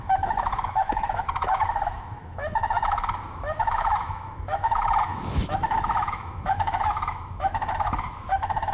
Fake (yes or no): yes